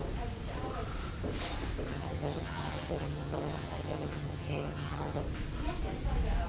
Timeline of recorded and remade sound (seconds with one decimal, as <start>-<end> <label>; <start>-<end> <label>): 0.0-1.9 recorded; 1.9-5.2 remade; 5.2-6.5 recorded